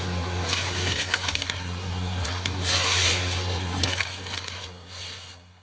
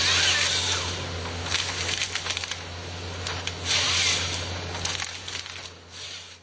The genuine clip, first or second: second